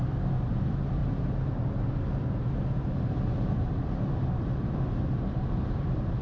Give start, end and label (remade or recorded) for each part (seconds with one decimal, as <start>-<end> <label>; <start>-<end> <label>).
0.0-1.0 remade; 1.0-3.1 recorded; 3.1-6.2 remade